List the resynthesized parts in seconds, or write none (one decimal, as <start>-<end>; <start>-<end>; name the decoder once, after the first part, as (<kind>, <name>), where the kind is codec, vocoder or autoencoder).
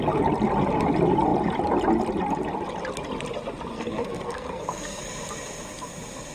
3.7-5.0 (codec, SNAC)